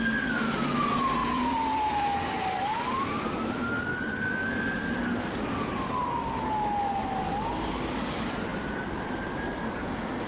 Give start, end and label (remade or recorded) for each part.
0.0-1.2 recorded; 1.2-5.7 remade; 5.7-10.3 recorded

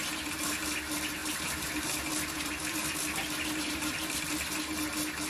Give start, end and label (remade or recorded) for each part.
0.0-1.2 recorded; 1.2-4.2 remade; 4.2-5.3 recorded

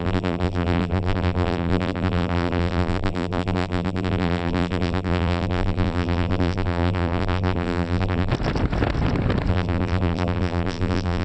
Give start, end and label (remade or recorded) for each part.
0.0-8.3 remade; 8.3-9.5 recorded; 9.5-11.2 remade

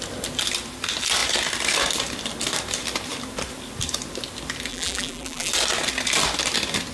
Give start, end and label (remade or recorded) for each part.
0.0-4.7 recorded; 4.7-5.5 remade; 5.5-6.9 recorded

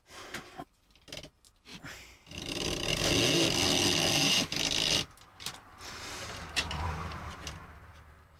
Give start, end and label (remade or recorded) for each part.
0.0-1.7 recorded; 1.7-3.1 remade; 3.1-5.3 recorded; 5.3-7.4 remade; 7.4-8.4 recorded